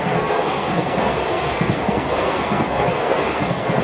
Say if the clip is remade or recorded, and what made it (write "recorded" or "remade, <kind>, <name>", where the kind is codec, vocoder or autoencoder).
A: remade, codec, SNAC